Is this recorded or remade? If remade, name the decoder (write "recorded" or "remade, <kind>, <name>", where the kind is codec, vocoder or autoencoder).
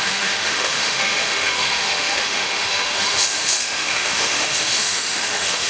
remade, autoencoder, DAC-VAE